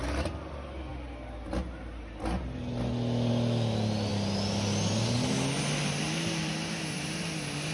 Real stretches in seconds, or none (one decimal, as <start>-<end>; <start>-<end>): 0.0-7.7